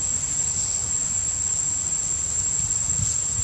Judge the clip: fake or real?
real